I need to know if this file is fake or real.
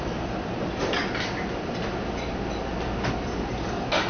real